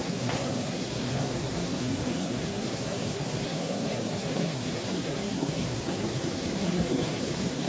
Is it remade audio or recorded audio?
remade